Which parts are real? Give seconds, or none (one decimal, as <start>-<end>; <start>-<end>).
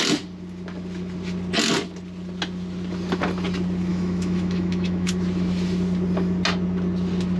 0.0-3.9; 5.1-7.4